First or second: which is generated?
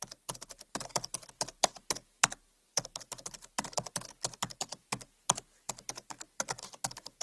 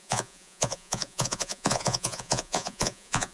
second